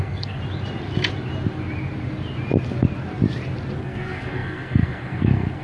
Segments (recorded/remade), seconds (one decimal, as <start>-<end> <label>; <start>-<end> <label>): 0.0-0.4 remade; 0.4-3.8 recorded; 3.8-5.6 remade

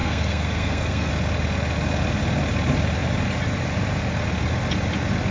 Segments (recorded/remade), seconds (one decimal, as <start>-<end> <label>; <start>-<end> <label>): 0.0-1.1 remade; 1.1-5.3 recorded

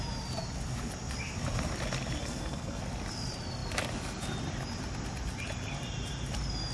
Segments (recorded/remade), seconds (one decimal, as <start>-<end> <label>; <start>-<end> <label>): 0.0-2.2 recorded; 2.2-2.8 remade; 2.8-6.7 recorded